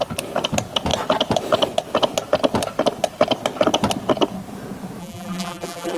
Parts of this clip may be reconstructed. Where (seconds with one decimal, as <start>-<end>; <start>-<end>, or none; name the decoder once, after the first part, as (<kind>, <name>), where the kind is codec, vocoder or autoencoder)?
5.0-6.0 (vocoder, BigVGAN v2)